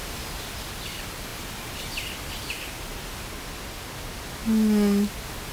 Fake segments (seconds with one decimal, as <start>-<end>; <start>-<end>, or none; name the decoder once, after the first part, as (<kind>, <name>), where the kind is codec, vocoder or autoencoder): none